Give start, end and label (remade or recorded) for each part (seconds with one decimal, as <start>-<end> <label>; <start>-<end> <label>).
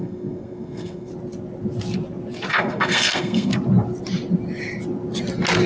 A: 0.0-1.1 remade; 1.1-2.5 recorded; 2.5-3.5 remade; 3.5-5.7 recorded